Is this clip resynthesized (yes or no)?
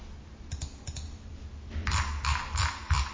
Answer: no